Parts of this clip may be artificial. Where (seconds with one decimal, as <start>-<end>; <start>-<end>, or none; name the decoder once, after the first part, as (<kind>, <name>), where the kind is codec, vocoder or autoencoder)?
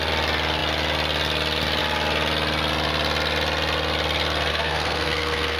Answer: 4.5-5.6 (codec, SNAC)